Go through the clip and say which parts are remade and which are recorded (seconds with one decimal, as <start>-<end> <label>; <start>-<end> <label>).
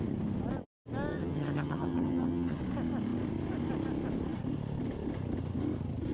0.0-1.1 recorded; 1.1-2.6 remade; 2.6-6.1 recorded